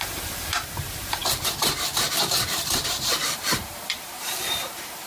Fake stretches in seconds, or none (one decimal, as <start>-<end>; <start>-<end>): 0.0-5.1